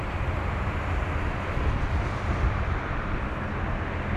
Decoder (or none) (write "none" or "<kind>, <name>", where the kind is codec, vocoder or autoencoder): vocoder, BigVGAN v2